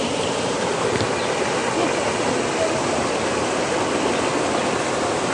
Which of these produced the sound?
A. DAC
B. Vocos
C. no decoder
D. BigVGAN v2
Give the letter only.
C